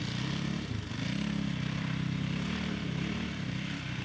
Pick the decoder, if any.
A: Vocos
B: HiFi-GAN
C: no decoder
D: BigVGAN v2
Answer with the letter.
C